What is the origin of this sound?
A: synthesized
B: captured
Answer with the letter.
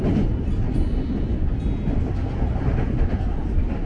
B